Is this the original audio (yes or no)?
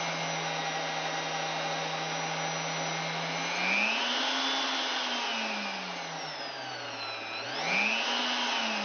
yes